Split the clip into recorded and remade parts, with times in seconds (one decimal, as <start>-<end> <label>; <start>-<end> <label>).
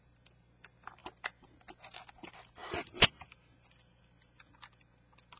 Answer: 0.0-5.4 recorded